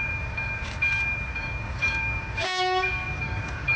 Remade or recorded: remade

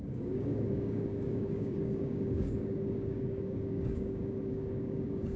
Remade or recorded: remade